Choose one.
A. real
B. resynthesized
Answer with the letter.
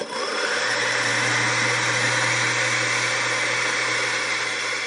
A